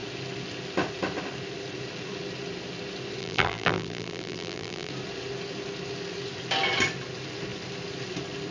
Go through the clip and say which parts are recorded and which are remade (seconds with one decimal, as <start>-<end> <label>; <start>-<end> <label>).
0.0-3.2 recorded; 3.2-4.9 remade; 4.9-8.5 recorded